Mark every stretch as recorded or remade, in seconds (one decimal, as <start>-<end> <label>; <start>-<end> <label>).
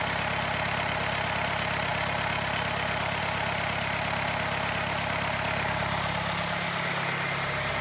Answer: 0.0-7.8 recorded